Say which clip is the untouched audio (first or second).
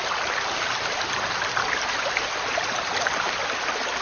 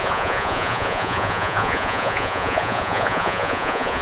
first